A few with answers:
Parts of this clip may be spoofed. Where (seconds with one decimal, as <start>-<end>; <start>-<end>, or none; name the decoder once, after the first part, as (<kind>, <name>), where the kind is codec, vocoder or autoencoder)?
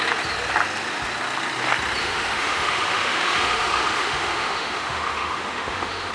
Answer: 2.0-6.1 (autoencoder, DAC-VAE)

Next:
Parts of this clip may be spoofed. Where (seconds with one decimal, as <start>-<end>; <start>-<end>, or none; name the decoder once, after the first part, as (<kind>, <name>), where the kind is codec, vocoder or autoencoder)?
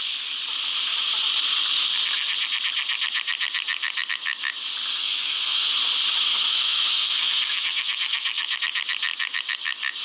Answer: 4.9-5.7 (autoencoder, DAC-VAE); 6.3-8.6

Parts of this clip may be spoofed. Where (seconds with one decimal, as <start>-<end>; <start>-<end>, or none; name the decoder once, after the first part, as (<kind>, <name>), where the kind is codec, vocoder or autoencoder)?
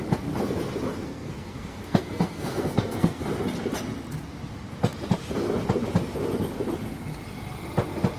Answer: 0.9-3.2 (codec, SNAC)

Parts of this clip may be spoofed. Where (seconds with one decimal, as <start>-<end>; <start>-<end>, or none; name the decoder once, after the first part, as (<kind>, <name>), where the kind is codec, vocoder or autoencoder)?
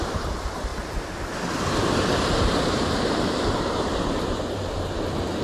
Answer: 0.0-5.4 (vocoder, BigVGAN v2)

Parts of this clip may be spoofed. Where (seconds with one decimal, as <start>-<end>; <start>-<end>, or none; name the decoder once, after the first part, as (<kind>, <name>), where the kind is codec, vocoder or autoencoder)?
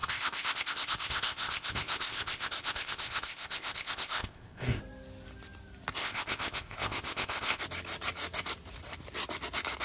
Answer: 0.0-4.8 (codec, ZipCodec); 6.0-7.6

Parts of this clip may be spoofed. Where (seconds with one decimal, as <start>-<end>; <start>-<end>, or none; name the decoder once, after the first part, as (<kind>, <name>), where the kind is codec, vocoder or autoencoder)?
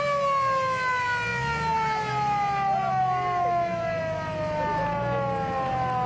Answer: none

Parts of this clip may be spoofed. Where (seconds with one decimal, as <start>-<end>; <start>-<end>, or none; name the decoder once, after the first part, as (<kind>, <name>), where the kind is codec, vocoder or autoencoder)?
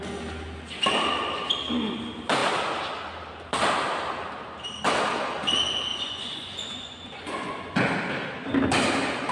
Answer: 5.9-7.9 (vocoder, Vocos)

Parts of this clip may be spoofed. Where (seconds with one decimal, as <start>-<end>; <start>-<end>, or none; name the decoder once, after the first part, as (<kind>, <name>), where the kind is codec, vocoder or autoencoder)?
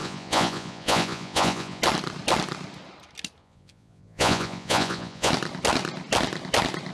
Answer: 0.0-1.8 (vocoder, Vocos); 3.4-5.3